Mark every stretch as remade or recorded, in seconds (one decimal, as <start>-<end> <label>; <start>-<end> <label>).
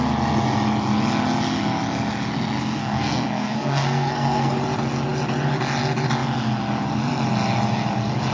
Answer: 0.0-2.8 recorded; 2.8-4.5 remade; 4.5-8.3 recorded